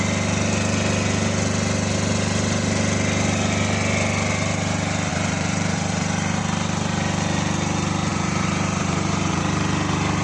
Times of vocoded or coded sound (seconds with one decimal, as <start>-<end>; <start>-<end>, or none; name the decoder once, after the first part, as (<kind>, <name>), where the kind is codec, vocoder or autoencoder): 5.1-6.4 (vocoder, BigVGAN v2); 8.1-9.4